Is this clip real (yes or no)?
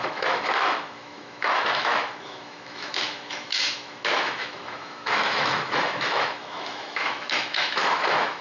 no